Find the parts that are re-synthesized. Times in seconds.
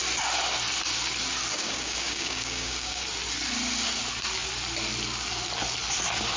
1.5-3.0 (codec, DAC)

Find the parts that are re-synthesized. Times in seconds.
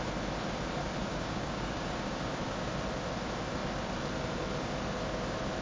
1.1-2.3 (codec, DAC)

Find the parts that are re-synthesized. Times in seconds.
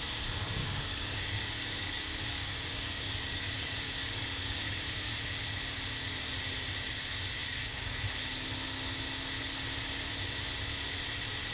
0.6-5.1 (codec, DAC)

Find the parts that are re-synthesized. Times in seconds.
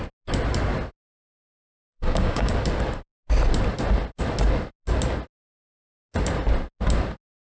1.9-2.5 (codec, DAC)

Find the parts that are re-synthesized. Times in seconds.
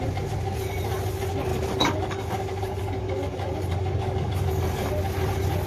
1.5-4.9 (codec, DAC)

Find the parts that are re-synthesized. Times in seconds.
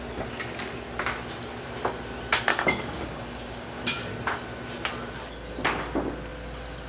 2.5-3.8 (codec, DAC)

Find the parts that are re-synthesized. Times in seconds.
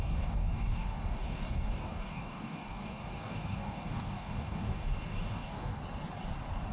0.0-5.8 (codec, DAC)